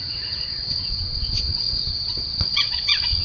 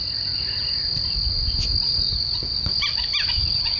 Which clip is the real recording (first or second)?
second